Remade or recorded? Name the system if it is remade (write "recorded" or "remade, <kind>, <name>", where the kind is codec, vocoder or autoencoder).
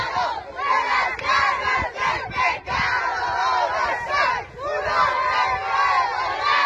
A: recorded